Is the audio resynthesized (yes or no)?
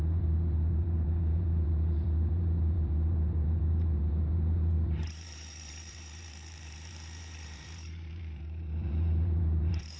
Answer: yes